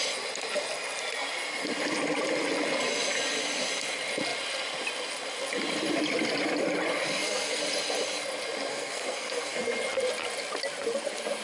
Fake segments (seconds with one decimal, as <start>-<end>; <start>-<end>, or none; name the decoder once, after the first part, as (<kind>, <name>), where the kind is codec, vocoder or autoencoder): 7.0-7.6 (codec, SNAC); 8.7-9.6